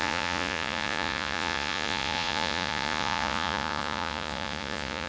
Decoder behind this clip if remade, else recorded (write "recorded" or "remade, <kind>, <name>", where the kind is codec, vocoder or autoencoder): remade, vocoder, Vocos